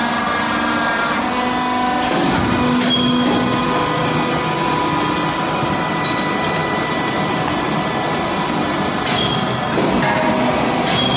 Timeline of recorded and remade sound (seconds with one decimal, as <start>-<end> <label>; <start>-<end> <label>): 0.0-11.2 recorded